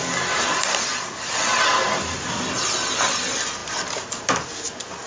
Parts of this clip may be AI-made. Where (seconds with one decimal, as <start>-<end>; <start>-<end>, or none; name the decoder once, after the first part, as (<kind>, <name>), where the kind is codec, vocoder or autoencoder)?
none